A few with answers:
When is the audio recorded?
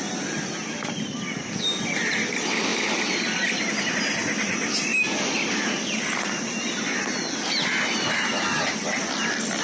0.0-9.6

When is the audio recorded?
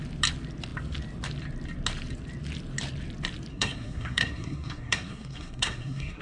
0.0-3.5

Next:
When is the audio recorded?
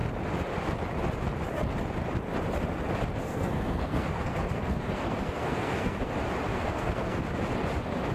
0.0-3.2; 6.1-6.5; 7.2-8.1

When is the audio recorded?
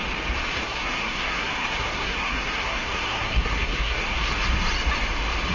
0.0-0.6; 4.3-5.5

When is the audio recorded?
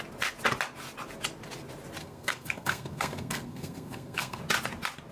0.0-2.0; 4.4-5.1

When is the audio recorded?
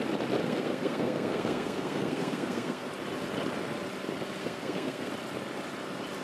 0.0-0.4; 2.9-4.4; 5.1-6.2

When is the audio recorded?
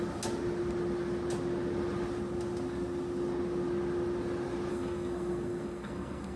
0.0-4.7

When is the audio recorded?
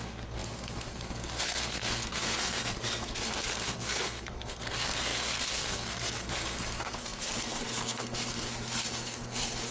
none